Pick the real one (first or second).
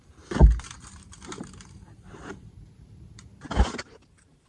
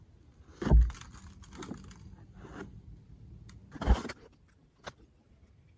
second